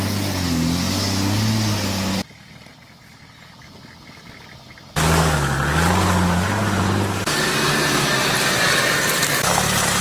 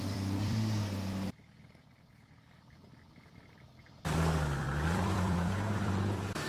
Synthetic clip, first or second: second